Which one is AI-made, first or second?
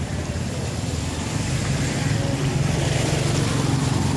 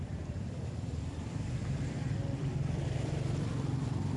second